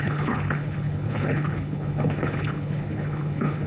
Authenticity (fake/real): fake